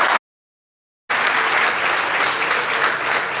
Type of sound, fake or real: real